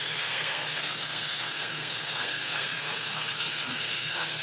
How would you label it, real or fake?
fake